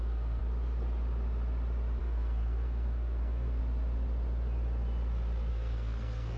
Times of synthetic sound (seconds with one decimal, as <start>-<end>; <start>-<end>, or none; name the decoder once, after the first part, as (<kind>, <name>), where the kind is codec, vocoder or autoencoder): 0.0-0.4 (codec, SNAC); 2.0-3.6; 5.5-6.4